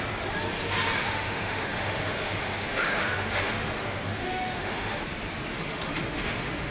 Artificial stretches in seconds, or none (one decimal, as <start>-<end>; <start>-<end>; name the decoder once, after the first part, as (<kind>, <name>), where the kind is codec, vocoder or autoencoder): 1.0-5.0 (autoencoder, DAC-VAE); 5.5-6.7